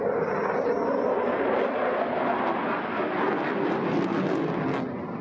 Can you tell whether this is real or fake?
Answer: real